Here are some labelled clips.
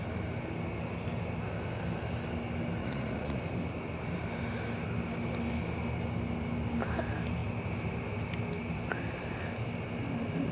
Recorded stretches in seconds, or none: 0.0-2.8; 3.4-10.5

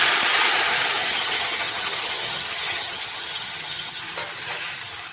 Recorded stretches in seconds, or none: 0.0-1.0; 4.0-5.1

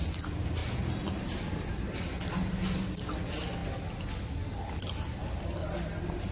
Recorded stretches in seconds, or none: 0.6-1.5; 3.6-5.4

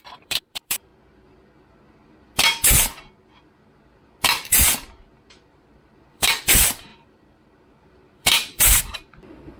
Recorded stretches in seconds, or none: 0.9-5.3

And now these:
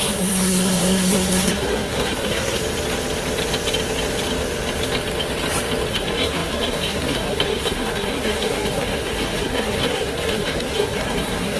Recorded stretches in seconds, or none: 2.6-5.9

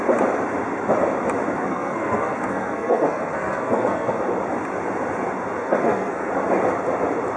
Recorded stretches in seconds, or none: 0.0-1.6; 4.2-5.6; 6.3-7.4

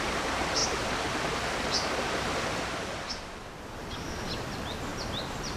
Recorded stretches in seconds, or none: 0.0-5.6